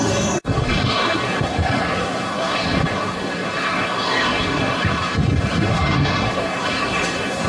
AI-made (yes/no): yes